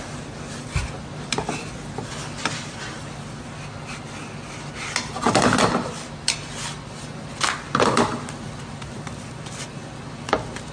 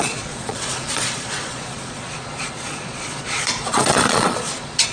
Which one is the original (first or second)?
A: first